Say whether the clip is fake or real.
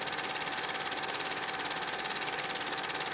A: real